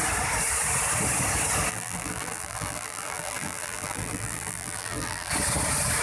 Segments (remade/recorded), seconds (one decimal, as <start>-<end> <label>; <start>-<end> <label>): 0.0-1.7 recorded; 1.7-5.3 remade; 5.3-6.0 recorded